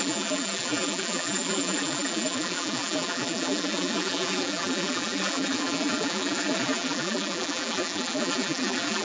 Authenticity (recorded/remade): remade